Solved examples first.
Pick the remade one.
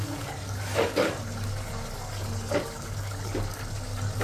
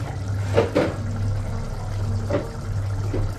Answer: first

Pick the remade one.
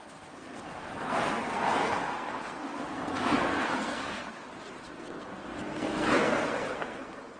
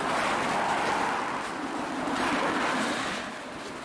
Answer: first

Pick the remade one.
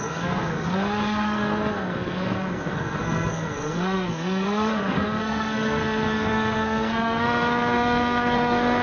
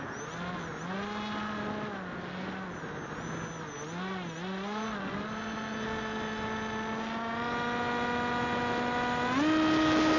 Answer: first